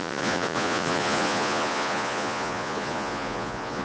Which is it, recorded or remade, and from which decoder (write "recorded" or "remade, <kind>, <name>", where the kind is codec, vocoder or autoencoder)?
remade, vocoder, Vocos